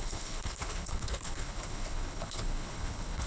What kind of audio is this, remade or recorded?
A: remade